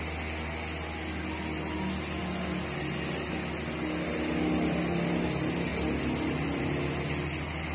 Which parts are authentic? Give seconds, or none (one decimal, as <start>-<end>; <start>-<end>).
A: 0.0-7.7